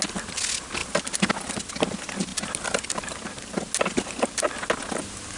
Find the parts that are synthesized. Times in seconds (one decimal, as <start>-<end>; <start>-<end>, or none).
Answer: none